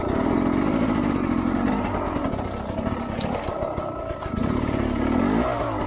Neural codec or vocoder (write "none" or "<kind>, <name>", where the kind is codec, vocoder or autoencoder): none